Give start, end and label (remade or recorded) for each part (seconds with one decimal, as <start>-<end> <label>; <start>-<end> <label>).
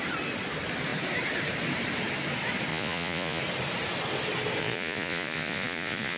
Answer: 0.0-2.7 recorded; 2.7-3.4 remade; 3.4-4.6 recorded; 4.6-6.2 remade